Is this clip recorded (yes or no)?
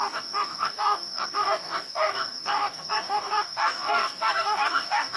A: no